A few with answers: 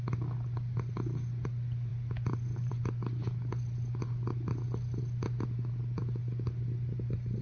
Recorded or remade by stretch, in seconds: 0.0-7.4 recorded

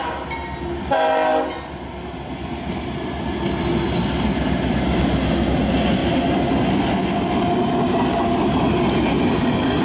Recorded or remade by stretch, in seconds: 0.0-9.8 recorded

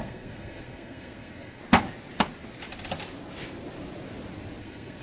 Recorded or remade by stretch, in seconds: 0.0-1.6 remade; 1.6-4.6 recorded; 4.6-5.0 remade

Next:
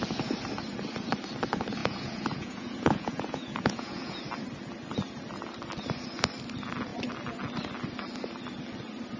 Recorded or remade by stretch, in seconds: 0.0-1.8 recorded; 1.8-4.2 remade; 4.2-9.2 recorded

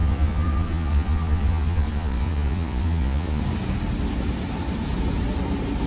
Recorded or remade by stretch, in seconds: 0.0-3.4 remade; 3.4-5.9 recorded

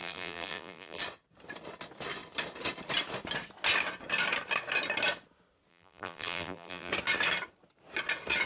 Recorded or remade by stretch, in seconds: 0.0-1.0 remade; 1.0-5.7 recorded; 5.7-6.9 remade; 6.9-8.5 recorded

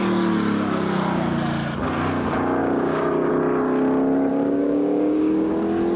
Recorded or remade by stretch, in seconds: 0.0-2.6 recorded; 2.6-3.3 remade; 3.3-4.3 recorded; 4.3-5.5 remade; 5.5-6.0 recorded

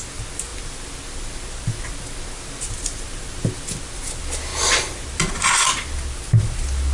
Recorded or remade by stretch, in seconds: 0.0-6.9 recorded